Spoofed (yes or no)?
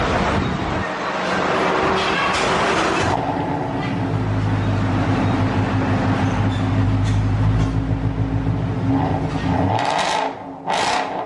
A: no